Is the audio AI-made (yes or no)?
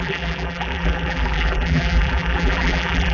yes